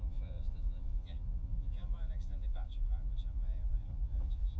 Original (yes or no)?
no